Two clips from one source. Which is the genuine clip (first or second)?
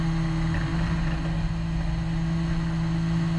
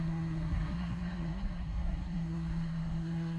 first